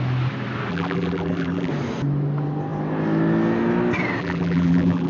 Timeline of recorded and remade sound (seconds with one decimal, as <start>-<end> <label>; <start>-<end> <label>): 0.0-0.7 recorded; 0.7-1.7 remade; 1.7-4.2 recorded; 4.2-5.1 remade

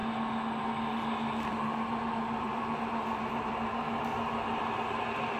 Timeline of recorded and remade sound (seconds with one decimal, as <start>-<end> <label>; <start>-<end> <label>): 0.0-1.5 recorded; 1.5-4.3 remade; 4.3-5.4 recorded

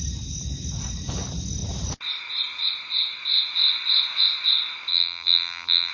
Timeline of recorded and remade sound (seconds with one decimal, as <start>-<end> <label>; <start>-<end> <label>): 0.0-4.9 recorded; 4.9-5.9 remade

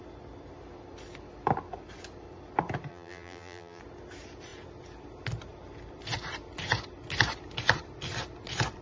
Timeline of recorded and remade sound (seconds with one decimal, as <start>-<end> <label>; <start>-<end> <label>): 0.0-2.9 recorded; 2.9-3.8 remade; 3.8-8.8 recorded

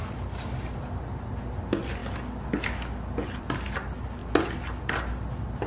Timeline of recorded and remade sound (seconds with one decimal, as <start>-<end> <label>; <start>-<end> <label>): 0.0-5.7 recorded